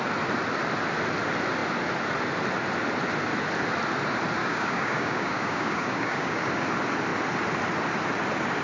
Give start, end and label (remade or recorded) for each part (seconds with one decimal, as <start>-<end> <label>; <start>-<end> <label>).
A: 0.0-4.4 recorded; 4.4-6.4 remade; 6.4-8.6 recorded